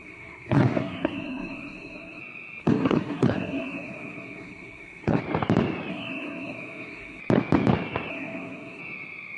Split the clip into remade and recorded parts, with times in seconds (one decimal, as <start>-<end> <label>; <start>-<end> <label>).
0.0-2.2 remade; 2.2-2.6 recorded; 2.6-5.2 remade; 5.2-5.9 recorded; 5.9-7.2 remade; 7.2-8.1 recorded; 8.1-8.8 remade; 8.8-9.4 recorded

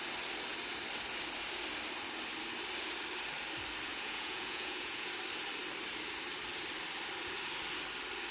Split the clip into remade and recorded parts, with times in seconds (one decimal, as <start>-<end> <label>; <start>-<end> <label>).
0.0-3.9 recorded; 3.9-5.1 remade; 5.1-8.3 recorded

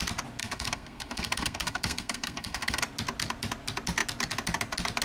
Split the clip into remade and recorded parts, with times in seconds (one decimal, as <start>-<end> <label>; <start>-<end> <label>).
0.0-0.4 recorded; 0.4-2.8 remade; 2.8-5.0 recorded

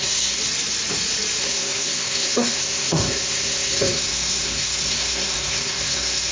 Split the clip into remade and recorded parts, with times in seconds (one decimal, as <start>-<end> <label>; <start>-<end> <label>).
0.0-0.4 remade; 0.4-1.4 recorded; 1.4-6.3 remade

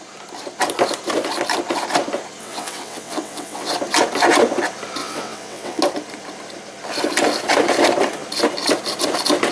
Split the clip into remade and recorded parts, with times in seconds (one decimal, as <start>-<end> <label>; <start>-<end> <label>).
0.0-2.4 recorded; 2.4-3.7 remade; 3.7-5.0 recorded; 5.0-5.8 remade; 5.8-9.5 recorded

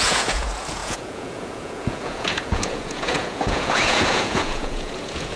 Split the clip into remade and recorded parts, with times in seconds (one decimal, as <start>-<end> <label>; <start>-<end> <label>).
0.0-5.4 remade

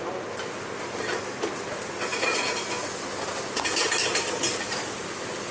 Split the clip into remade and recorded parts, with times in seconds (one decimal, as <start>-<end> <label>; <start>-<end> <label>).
0.0-5.5 recorded

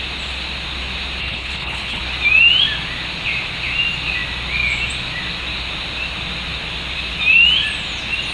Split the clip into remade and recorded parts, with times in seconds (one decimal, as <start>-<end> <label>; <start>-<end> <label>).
0.0-1.2 recorded; 1.2-2.0 remade; 2.0-8.3 recorded